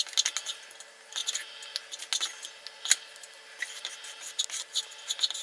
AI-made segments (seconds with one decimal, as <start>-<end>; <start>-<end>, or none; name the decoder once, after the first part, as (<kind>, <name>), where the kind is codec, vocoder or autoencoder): none